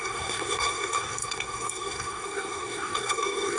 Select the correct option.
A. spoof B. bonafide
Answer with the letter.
A